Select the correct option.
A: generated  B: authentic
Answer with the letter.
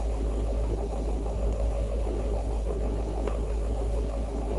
A